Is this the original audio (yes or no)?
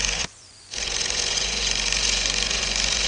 no